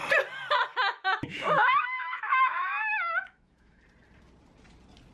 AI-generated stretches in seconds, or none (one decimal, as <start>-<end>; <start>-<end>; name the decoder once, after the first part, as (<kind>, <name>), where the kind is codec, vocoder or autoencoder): 0.7-3.8 (autoencoder, DAC-VAE)